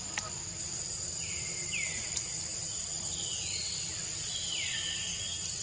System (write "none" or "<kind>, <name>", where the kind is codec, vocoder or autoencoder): vocoder, BigVGAN v2